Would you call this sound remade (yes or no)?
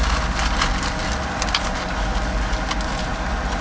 no